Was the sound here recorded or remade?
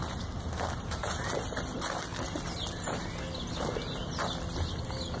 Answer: recorded